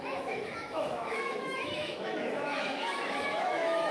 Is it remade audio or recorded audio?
remade